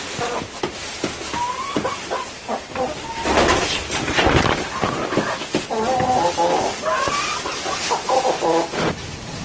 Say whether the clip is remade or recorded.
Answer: recorded